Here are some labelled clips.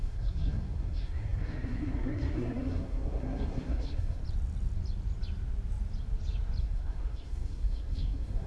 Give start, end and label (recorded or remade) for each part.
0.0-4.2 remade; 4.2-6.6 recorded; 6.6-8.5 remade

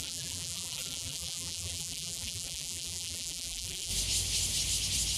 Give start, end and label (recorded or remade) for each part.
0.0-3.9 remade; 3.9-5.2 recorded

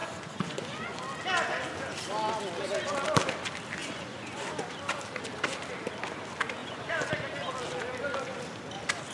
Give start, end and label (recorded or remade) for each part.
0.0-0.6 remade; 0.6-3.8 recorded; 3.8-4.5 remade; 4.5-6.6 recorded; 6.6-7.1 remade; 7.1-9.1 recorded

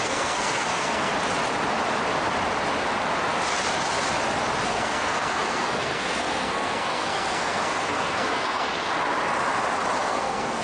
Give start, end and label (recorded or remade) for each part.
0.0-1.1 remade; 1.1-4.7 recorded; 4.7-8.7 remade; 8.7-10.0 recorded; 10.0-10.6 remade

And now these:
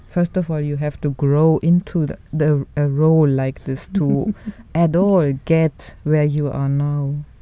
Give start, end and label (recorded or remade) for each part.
0.0-7.4 recorded

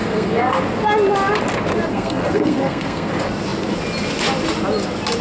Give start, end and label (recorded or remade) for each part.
0.0-0.6 remade; 0.6-1.9 recorded; 1.9-3.1 remade; 3.1-5.2 recorded

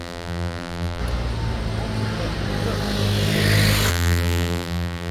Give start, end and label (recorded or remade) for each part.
0.0-1.0 remade; 1.0-3.9 recorded; 3.9-5.1 remade